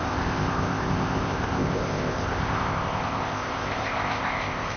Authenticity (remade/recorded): remade